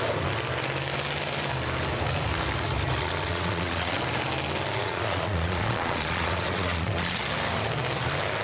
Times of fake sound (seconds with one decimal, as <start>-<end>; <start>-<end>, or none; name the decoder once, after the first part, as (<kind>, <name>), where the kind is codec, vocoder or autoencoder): 3.3-4.0 (vocoder, Vocos); 4.8-7.2

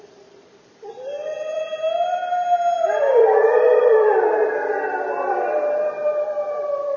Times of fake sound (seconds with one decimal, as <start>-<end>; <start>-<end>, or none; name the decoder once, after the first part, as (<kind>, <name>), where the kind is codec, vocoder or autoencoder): 0.0-1.7 (vocoder, BigVGAN v2); 3.0-7.0

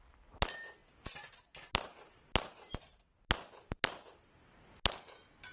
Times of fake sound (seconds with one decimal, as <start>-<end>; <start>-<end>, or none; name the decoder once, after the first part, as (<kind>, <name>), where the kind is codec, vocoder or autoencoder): none

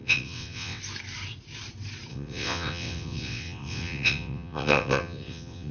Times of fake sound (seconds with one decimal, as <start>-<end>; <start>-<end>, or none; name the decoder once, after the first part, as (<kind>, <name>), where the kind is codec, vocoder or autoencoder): 0.0-0.8 (vocoder, WaveNeXt); 2.1-5.7

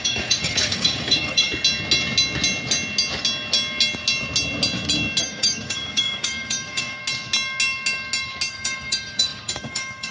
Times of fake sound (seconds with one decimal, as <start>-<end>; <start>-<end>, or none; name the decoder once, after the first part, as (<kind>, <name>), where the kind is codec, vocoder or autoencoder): 0.0-1.5 (codec, DAC); 5.2-7.0; 8.5-10.1

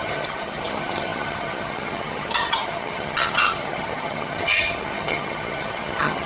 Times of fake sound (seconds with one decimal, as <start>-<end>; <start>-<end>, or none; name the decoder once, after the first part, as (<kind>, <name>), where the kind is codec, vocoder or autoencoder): 0.0-6.3 (vocoder, HiFi-GAN)

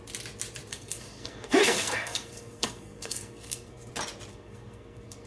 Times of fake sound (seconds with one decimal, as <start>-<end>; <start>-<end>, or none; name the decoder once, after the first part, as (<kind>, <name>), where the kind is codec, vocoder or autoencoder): 0.7-3.9 (codec, SNAC); 4.3-5.3